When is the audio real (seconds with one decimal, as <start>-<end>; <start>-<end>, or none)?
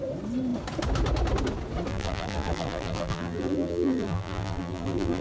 0.0-1.9